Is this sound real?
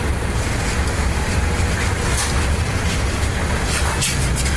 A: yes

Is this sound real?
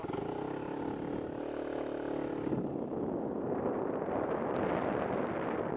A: yes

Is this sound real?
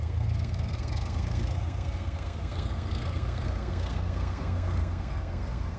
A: no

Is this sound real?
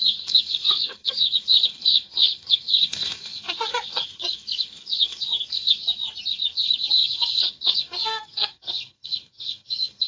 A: no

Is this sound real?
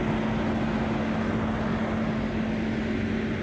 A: yes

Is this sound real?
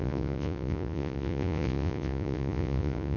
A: no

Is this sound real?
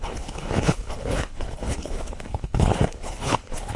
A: no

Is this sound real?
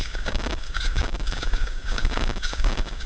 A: no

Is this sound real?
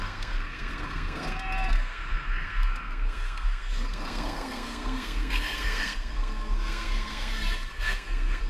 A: no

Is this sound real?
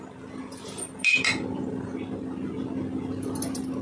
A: yes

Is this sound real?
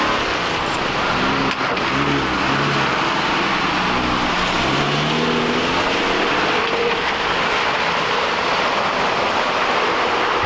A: yes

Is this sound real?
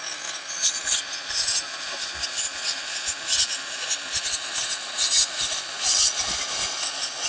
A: yes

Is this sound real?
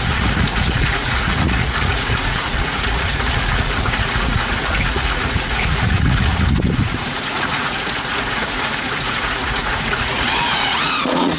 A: no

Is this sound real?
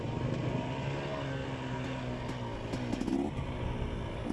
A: yes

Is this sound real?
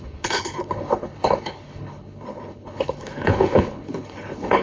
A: no